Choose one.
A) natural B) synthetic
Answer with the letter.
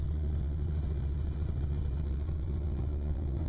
B